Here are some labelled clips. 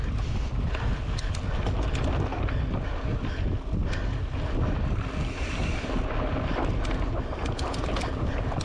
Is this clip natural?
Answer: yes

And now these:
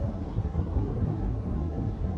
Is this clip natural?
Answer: no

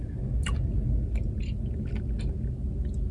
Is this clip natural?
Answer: yes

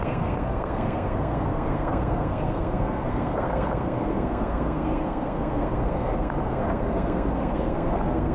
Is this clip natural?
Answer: no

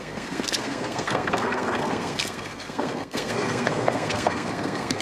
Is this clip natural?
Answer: no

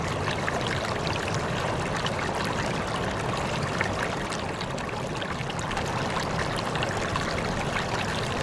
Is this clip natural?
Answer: yes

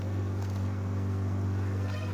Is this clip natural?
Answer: no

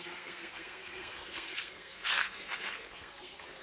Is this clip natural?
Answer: no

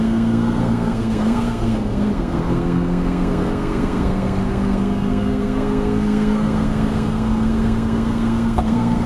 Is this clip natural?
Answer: no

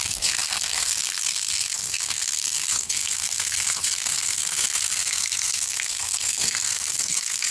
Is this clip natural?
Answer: no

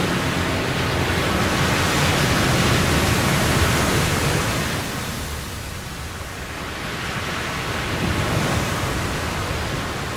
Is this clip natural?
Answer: yes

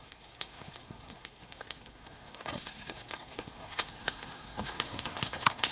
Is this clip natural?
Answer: no